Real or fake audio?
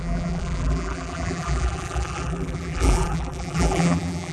fake